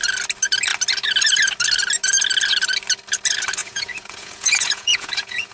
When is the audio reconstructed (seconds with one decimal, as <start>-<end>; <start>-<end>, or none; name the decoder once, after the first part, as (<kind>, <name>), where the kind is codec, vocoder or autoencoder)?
3.6-5.5 (vocoder, Vocos)